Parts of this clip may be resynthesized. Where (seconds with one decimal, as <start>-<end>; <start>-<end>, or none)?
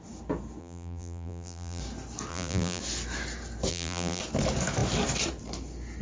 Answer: 0.6-1.8; 2.3-2.8; 3.7-4.2